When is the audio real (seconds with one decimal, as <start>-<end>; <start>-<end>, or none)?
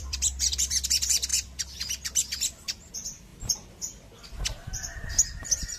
3.3-5.8